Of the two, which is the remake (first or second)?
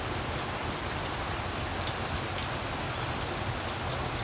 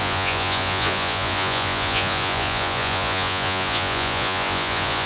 second